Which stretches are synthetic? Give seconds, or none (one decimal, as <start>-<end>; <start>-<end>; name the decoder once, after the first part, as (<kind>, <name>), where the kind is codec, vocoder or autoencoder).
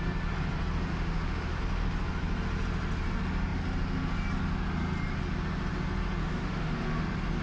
0.9-1.6 (autoencoder, DAC-VAE); 6.2-7.0